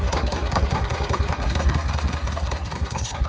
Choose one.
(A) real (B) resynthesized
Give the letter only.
B